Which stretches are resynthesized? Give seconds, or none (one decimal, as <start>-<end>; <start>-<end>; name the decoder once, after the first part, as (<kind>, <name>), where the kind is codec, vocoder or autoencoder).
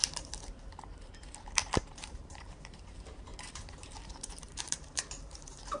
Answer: 0.0-5.8 (vocoder, BigVGAN v2)